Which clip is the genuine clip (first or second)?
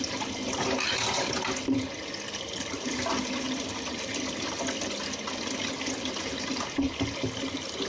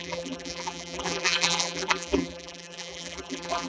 first